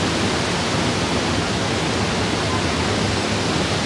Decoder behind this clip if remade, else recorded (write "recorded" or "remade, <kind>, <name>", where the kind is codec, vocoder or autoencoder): recorded